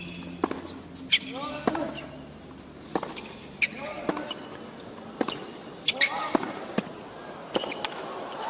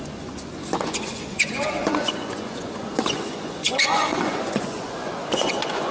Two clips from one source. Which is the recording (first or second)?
first